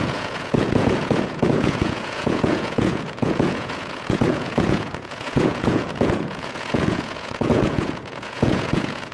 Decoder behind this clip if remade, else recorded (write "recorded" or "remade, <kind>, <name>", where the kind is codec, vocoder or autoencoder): remade, vocoder, Vocos